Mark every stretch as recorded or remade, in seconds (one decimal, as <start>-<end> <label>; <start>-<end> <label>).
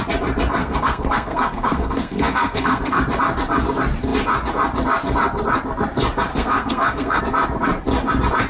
0.0-0.6 recorded; 0.6-3.0 remade; 3.0-6.3 recorded; 6.3-7.2 remade; 7.2-8.5 recorded